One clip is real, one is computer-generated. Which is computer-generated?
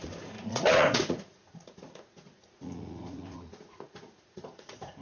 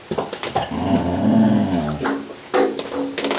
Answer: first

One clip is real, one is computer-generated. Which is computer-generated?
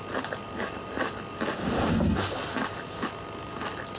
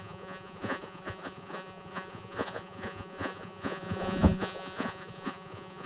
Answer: second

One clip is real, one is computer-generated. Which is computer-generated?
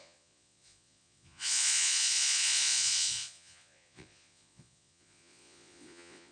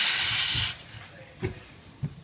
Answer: first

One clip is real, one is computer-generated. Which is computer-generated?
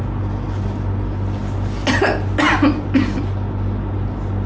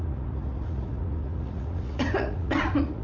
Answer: second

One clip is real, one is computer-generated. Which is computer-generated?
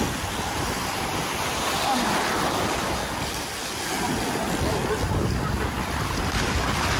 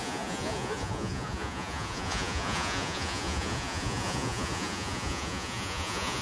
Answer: second